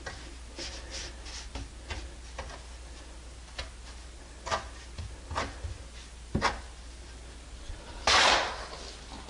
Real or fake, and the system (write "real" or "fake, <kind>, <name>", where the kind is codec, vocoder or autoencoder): real